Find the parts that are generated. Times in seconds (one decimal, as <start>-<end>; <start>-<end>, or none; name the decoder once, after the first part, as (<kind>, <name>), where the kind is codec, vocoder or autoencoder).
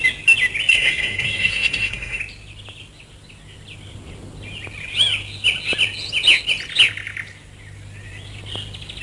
0.7-2.2 (codec, SNAC)